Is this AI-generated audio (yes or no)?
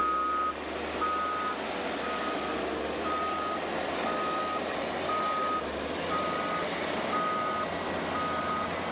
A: no